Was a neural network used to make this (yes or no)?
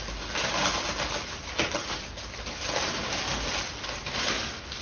no